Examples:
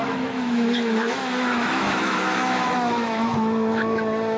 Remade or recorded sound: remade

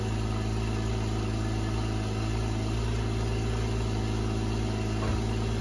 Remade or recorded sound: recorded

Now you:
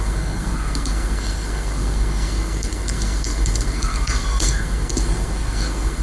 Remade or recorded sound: remade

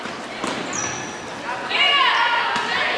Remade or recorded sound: recorded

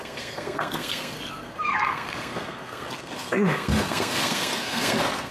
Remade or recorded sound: remade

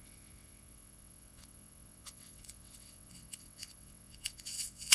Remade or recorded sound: remade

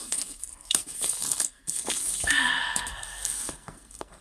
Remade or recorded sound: remade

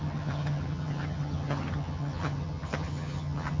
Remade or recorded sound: remade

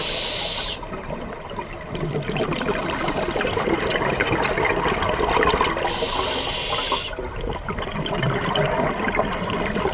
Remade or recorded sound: recorded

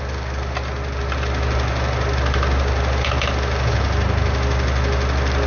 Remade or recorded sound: recorded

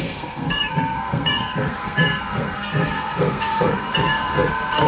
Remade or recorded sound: remade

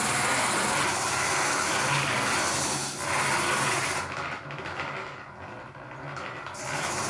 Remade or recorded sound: recorded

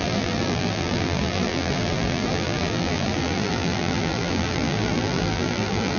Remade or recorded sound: remade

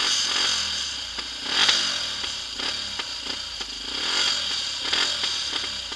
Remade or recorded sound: recorded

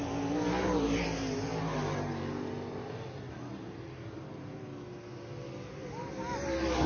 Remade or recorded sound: recorded